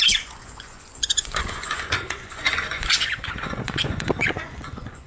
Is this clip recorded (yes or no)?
no